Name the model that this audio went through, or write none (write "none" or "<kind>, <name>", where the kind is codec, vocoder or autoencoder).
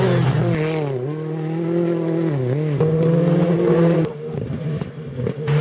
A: none